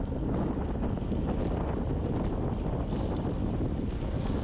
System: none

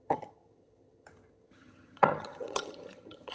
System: vocoder, HiFi-GAN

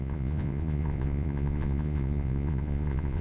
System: vocoder, Vocos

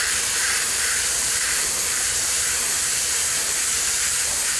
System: vocoder, BigVGAN v2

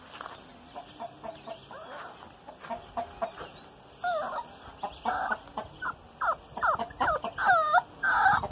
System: none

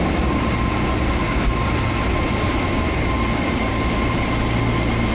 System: none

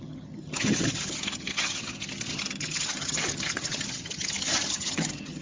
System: vocoder, HiFi-GAN